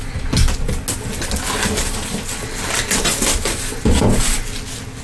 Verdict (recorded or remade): recorded